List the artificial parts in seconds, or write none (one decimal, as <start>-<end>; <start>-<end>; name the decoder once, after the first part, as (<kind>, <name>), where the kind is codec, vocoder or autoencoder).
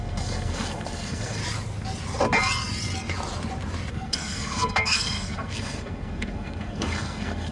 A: 0.0-1.4 (codec, SNAC); 3.9-7.5